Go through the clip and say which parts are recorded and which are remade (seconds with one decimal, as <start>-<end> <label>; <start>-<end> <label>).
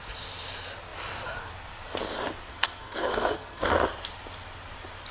0.0-2.5 recorded; 2.5-3.7 remade; 3.7-5.1 recorded